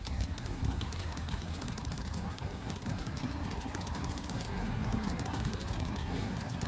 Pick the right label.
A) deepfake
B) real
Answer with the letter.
A